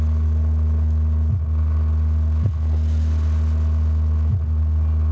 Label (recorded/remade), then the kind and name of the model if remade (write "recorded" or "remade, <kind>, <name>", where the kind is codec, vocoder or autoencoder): recorded